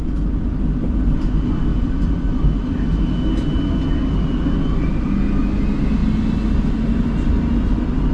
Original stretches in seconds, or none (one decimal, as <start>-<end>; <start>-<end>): 0.0-8.1